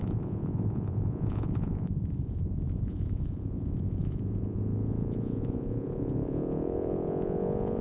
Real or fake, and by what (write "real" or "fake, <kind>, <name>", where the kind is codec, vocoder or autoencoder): fake, vocoder, Vocos